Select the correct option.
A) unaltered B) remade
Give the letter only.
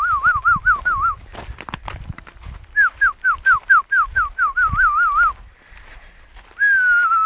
A